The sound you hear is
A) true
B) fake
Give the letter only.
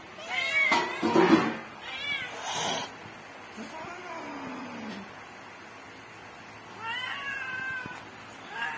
A